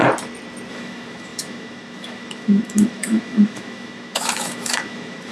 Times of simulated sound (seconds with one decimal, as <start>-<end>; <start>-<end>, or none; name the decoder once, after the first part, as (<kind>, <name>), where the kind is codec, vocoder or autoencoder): 0.7-5.3 (autoencoder, DAC-VAE)